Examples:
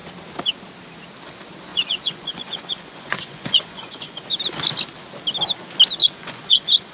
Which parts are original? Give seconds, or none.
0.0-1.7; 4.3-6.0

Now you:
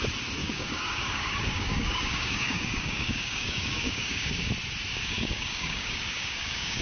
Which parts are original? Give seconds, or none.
0.0-0.4; 4.5-4.9

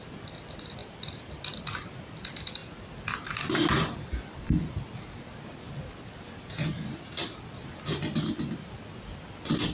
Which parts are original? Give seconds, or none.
0.0-0.8; 1.4-9.7

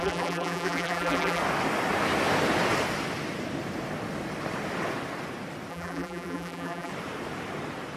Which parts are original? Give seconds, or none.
1.4-5.7; 6.9-8.0